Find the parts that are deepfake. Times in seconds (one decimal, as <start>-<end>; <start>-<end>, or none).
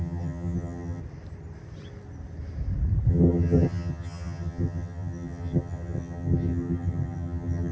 0.0-1.0; 3.1-7.7